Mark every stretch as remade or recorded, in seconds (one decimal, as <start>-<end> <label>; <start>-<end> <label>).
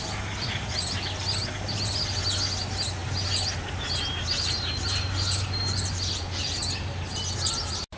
0.0-8.0 recorded